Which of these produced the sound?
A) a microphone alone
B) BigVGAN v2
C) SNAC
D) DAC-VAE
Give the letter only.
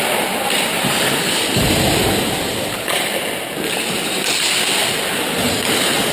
A